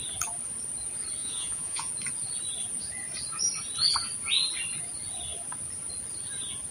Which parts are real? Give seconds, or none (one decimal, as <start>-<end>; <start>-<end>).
0.0-1.2; 1.9-6.7